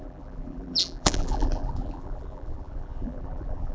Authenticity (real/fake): fake